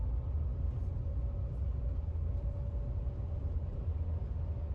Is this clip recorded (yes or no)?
yes